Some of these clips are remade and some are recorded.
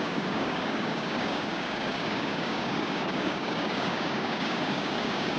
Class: remade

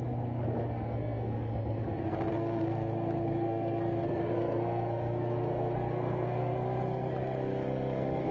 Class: remade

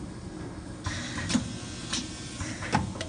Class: recorded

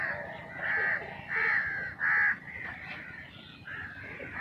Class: recorded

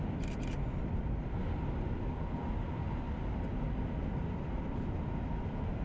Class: recorded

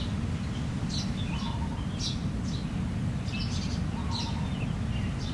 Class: recorded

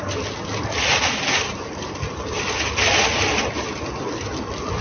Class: recorded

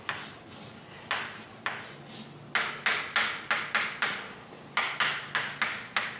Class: recorded